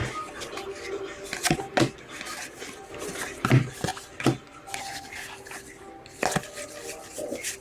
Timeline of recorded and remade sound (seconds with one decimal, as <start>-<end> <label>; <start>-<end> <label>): 0.0-7.6 recorded